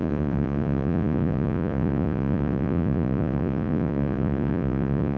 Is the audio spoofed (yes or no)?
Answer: yes